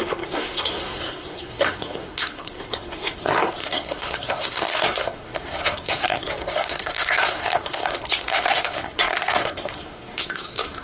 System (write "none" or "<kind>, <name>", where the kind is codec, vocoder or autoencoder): codec, SNAC